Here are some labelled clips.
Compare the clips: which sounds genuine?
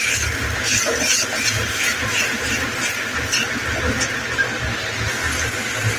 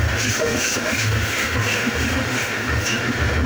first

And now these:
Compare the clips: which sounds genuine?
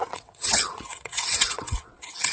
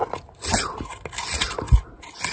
second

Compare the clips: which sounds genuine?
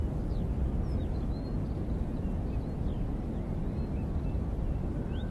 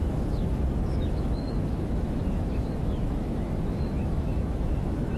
first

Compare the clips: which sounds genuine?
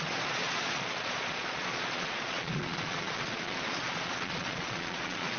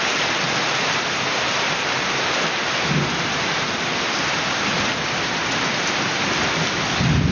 second